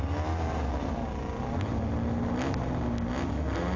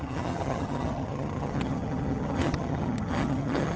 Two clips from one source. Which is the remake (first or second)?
second